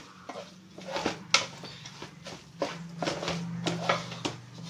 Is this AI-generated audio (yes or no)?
no